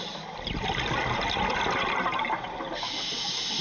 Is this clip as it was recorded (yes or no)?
yes